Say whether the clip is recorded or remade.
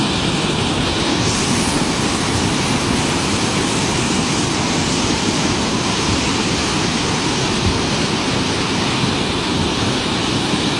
recorded